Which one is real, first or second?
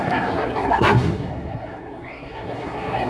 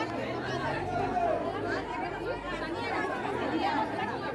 second